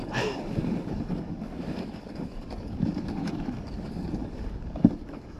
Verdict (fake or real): fake